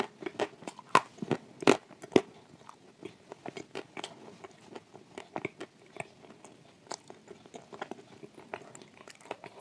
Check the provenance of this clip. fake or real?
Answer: real